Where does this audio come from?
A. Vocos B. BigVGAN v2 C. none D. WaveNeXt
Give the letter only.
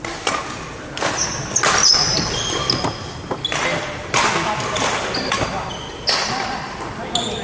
C